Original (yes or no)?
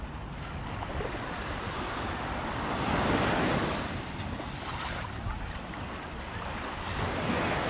yes